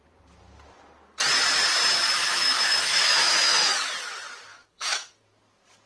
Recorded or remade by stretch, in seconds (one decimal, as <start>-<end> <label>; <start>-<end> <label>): 0.0-2.3 recorded; 2.3-3.9 remade; 3.9-4.5 recorded; 4.5-5.2 remade; 5.2-5.9 recorded